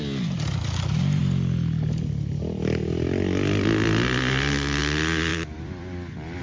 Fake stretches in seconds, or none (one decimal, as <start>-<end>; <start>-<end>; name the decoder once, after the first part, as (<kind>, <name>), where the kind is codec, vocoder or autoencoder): 0.0-1.2 (vocoder, BigVGAN v2); 4.8-5.3